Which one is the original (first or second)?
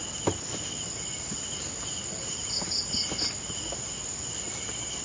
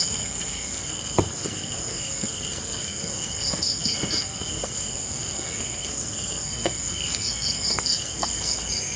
first